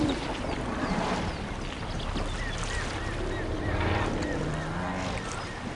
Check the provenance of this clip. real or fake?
real